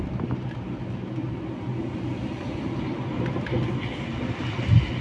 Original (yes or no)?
yes